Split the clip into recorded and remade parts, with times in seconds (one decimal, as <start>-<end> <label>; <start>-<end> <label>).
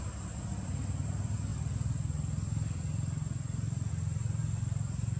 0.0-5.2 recorded